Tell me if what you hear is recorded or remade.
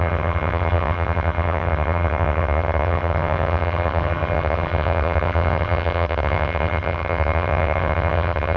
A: remade